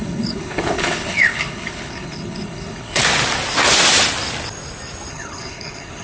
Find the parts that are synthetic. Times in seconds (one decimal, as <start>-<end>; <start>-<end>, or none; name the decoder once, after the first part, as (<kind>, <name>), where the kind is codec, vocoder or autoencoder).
0.0-3.0 (codec, HILCodec); 5.1-6.0